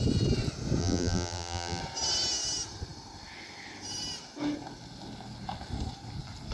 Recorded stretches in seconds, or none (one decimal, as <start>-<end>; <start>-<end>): 0.0-0.8; 1.8-6.5